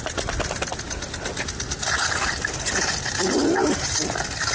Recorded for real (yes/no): yes